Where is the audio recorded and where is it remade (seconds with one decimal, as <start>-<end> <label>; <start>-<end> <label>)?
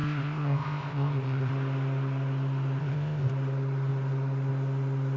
0.0-1.5 remade; 1.5-2.8 recorded; 2.8-3.3 remade; 3.3-5.2 recorded